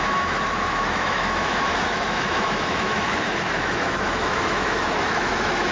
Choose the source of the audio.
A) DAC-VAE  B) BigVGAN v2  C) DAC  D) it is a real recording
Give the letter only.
A